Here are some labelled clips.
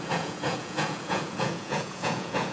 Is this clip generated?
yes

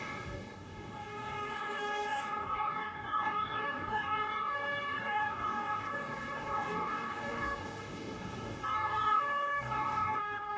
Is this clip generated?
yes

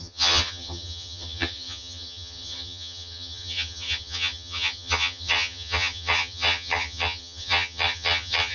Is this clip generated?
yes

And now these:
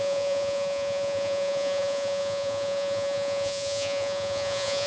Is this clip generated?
yes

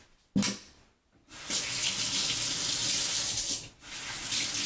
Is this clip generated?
no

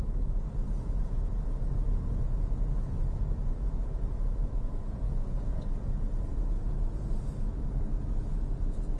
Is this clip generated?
yes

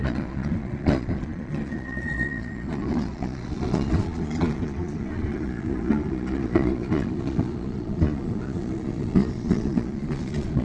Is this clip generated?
yes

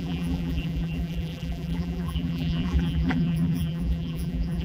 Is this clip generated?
yes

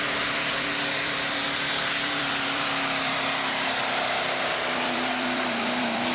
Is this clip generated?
yes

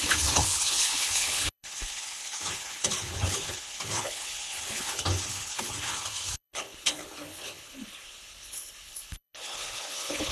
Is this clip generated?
yes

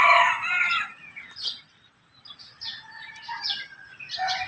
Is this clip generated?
no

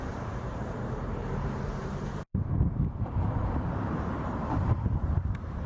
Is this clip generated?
yes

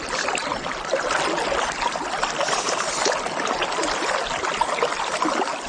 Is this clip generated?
no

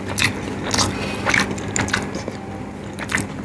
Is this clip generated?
no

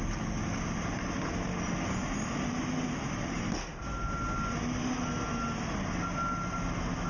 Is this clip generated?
no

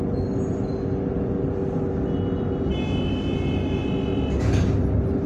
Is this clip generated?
no